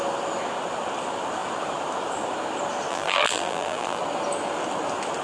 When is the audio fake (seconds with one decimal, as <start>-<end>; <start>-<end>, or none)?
2.9-4.0